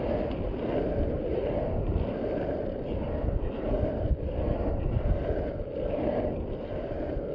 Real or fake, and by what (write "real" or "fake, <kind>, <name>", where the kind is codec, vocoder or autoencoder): real